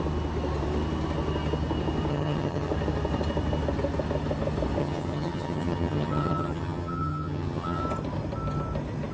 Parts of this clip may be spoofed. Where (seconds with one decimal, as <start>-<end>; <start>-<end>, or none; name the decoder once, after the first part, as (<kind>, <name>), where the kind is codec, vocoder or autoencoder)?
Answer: 2.1-2.7 (vocoder, HiFi-GAN); 4.8-7.8